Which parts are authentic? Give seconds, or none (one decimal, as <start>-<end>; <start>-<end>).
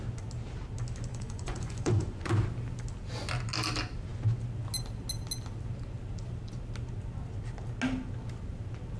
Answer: 0.0-1.1; 2.3-9.0